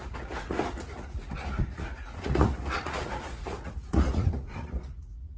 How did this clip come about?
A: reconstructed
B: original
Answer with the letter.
A